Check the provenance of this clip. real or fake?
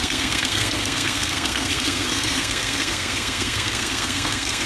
fake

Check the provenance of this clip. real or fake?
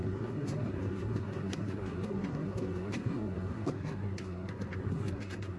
fake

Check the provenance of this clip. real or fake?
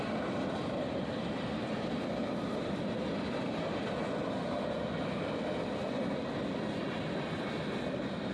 real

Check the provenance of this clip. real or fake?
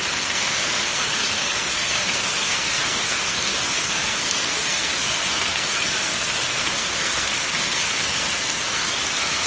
fake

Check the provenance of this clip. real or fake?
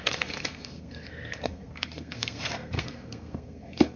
fake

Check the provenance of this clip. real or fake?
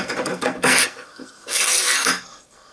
fake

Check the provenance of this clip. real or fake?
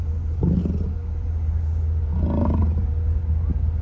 real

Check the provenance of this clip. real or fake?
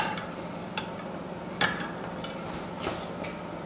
real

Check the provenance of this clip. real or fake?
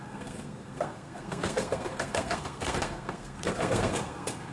fake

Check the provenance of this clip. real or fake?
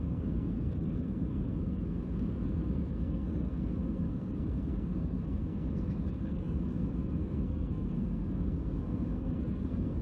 fake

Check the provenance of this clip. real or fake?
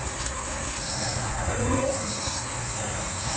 fake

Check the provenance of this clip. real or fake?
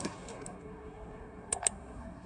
fake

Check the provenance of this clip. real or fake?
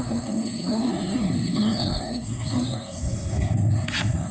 fake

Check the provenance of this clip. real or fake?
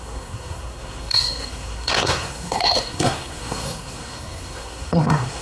fake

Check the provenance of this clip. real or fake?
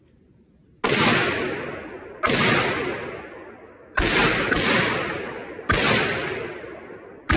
real